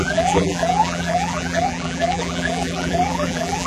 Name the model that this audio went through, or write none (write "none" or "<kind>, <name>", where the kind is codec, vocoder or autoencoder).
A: vocoder, BigVGAN v2